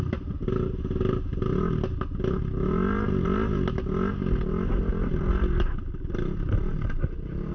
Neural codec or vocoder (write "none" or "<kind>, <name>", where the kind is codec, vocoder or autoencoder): none